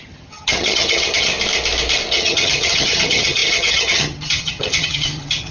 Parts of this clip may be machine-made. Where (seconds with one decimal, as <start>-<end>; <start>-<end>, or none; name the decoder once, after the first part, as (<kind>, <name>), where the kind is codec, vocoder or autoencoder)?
0.0-1.3 (vocoder, HiFi-GAN); 2.1-5.5